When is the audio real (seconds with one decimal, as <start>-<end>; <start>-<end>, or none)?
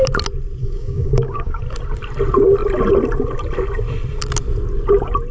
0.0-0.6; 1.6-5.3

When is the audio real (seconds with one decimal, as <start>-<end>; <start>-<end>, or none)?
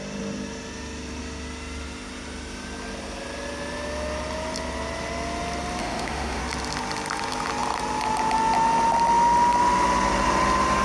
0.0-5.8; 6.4-10.8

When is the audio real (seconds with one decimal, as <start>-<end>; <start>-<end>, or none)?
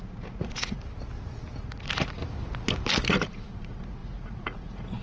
0.8-1.6; 2.2-3.1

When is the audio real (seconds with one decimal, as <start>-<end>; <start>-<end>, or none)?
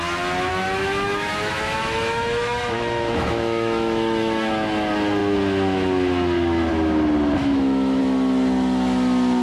0.0-0.5; 4.5-7.4; 8.0-9.4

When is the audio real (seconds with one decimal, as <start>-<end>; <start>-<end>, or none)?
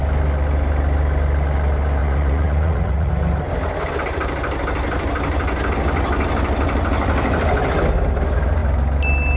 0.0-2.0; 3.1-9.4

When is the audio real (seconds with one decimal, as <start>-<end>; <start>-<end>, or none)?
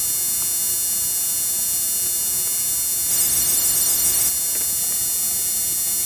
0.0-3.1; 4.3-6.1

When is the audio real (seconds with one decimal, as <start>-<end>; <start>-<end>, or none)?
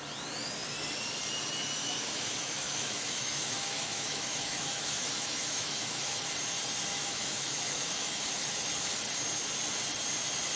0.0-1.8; 6.2-6.9; 8.3-10.6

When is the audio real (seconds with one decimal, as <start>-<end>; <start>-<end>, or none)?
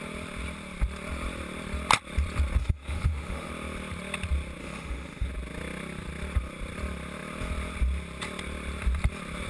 0.0-2.6; 3.5-4.6; 5.3-9.5